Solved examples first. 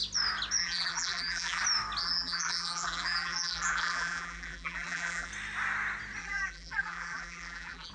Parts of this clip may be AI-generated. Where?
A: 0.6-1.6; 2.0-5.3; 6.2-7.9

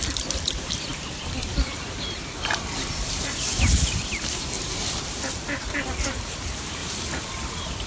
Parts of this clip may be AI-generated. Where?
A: 0.9-4.8; 6.8-7.9

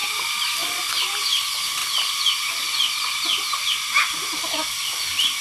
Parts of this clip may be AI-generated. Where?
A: 0.0-0.8; 3.1-4.2

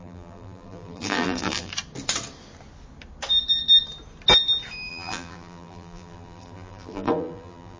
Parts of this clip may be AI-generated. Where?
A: 0.0-1.7; 4.9-7.8

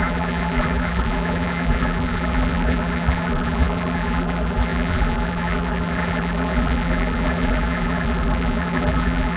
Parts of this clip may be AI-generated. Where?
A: 0.0-9.4

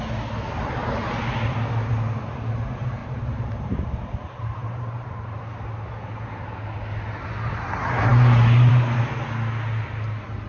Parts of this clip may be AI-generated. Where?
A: 3.0-5.4

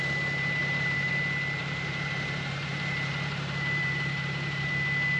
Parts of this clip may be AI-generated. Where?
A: 0.6-1.1; 1.6-4.7